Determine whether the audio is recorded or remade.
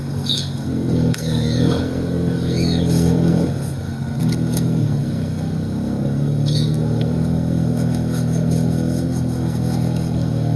remade